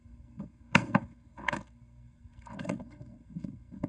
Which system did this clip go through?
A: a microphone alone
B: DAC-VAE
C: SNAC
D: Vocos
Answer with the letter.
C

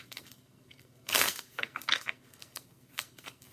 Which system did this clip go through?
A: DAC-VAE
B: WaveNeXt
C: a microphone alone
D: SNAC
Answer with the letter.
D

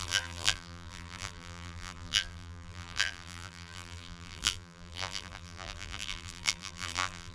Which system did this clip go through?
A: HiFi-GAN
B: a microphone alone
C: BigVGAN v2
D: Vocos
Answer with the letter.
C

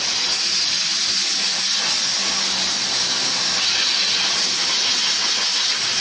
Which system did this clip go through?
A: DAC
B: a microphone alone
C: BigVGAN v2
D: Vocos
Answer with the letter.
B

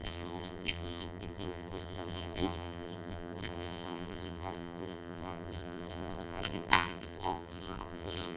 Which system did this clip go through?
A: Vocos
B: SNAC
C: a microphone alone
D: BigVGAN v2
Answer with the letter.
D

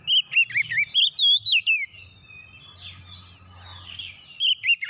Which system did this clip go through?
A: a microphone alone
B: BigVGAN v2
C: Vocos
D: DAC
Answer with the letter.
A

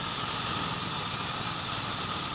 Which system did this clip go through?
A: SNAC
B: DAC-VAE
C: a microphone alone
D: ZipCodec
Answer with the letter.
C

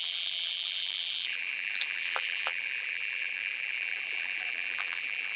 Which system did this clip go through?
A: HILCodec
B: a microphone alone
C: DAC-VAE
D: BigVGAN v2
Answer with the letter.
D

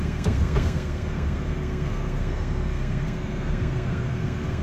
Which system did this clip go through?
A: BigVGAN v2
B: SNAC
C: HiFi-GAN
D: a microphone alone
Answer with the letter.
B